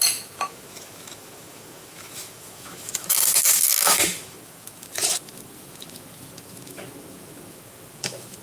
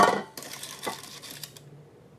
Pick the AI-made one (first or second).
first